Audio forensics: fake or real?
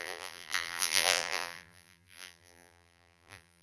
fake